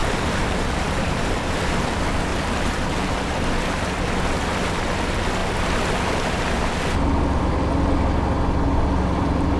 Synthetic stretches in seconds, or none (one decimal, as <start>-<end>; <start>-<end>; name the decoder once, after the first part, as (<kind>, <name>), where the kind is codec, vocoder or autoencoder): 0.0-1.2 (vocoder, BigVGAN v2); 2.3-3.5